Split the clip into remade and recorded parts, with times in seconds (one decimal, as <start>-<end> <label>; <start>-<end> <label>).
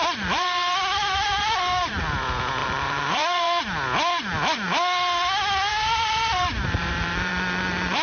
0.0-2.0 remade; 2.0-2.6 recorded; 2.6-3.6 remade; 3.6-5.7 recorded; 5.7-7.3 remade; 7.3-8.0 recorded